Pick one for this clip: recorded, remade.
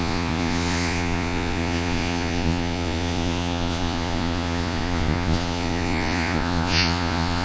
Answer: remade